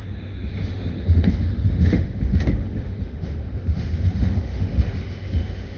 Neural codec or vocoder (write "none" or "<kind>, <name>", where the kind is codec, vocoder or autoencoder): autoencoder, DAC-VAE